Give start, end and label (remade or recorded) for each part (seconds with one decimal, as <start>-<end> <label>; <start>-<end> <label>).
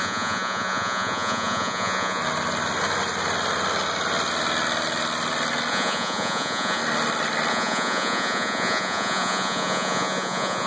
0.0-2.2 remade; 2.2-5.7 recorded; 5.7-6.8 remade; 6.8-7.5 recorded; 7.5-10.7 remade